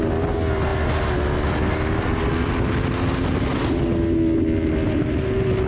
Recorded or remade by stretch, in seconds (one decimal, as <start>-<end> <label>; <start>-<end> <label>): 0.0-5.7 recorded